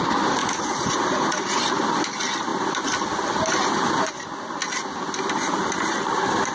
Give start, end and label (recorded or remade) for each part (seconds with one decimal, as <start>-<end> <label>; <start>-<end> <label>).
0.0-0.4 recorded; 0.4-1.6 remade; 1.6-6.5 recorded